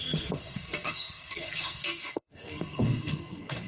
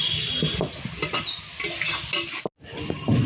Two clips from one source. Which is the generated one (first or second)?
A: first